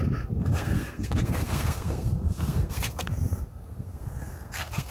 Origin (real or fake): fake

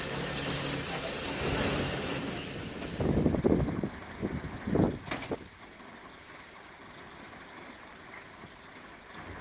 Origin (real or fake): real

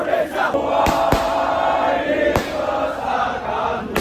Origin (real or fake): real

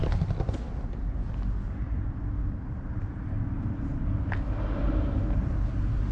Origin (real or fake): real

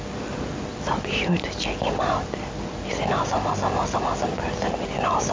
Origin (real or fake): real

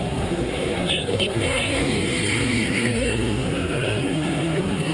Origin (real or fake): fake